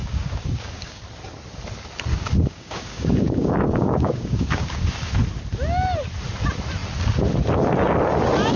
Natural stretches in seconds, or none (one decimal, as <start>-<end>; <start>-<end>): 1.0-2.1; 5.1-8.6